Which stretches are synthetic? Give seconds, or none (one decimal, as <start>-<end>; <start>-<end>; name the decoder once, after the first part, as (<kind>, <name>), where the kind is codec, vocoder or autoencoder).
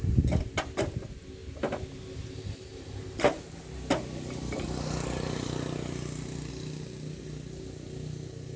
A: none